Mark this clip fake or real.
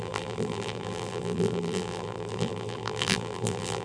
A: fake